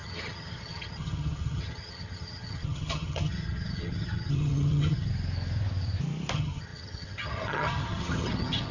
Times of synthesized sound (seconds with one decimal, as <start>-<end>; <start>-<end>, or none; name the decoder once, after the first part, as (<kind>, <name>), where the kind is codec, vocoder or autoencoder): 0.0-5.1 (vocoder, HiFi-GAN); 6.3-8.7